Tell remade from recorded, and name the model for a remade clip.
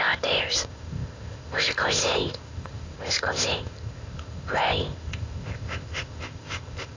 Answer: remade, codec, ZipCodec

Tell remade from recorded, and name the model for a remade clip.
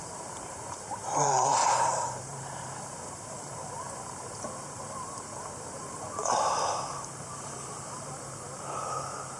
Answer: remade, vocoder, BigVGAN v2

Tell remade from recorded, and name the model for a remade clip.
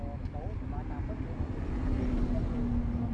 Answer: recorded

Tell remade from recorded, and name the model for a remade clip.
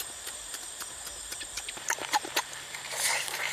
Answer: remade, vocoder, BigVGAN v2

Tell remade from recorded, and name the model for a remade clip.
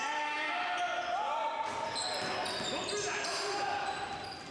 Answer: recorded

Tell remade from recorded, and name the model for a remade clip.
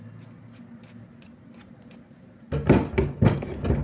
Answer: recorded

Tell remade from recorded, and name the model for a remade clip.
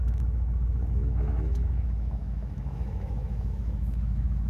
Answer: remade, autoencoder, DAC-VAE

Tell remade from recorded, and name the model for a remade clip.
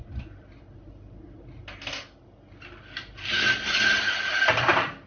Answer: recorded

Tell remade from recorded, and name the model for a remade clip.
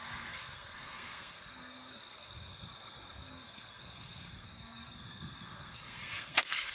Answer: remade, codec, SNAC